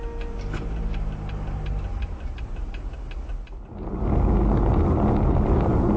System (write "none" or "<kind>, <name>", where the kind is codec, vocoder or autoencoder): none